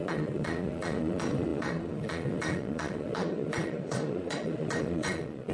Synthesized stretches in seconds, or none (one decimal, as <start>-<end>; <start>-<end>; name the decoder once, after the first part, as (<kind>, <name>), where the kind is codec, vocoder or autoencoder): 0.0-5.5 (vocoder, Vocos)